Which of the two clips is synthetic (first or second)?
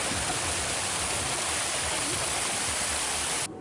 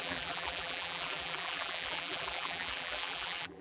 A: second